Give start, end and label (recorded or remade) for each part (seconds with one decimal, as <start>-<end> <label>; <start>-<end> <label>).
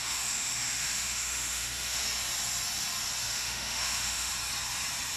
0.0-2.0 remade; 2.0-3.3 recorded; 3.3-4.3 remade; 4.3-5.2 recorded